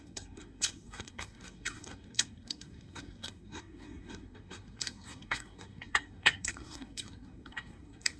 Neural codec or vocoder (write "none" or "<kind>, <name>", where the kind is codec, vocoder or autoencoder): codec, SNAC